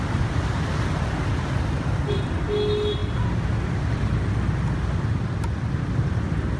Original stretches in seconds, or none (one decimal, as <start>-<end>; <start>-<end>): 0.0-6.6